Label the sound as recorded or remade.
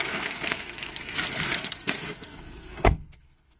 remade